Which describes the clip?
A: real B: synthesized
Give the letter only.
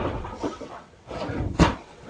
B